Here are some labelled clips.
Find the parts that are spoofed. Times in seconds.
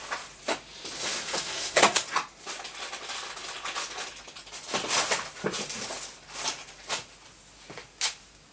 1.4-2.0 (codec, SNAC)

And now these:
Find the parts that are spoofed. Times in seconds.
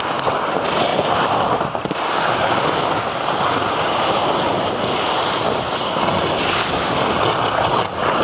none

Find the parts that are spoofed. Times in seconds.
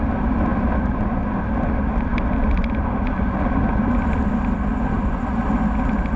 none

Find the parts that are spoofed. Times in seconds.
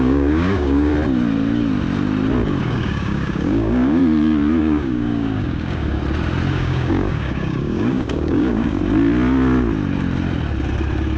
0.0-0.9 (codec, DAC); 2.6-4.0; 4.6-6.0; 6.5-8.8